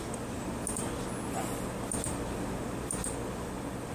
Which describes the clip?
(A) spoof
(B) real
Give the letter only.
B